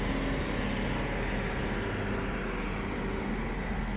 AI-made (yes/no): no